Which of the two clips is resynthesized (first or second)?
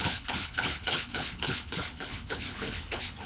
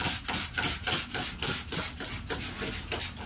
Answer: first